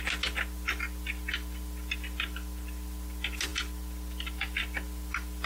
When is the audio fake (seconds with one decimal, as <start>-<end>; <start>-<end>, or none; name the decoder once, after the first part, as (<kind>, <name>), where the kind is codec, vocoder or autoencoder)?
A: none